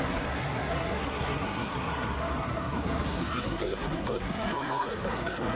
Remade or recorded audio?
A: remade